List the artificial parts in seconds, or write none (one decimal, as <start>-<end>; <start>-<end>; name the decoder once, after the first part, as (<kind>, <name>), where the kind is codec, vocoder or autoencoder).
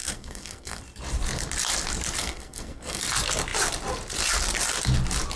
0.0-0.8 (codec, SNAC); 2.2-3.0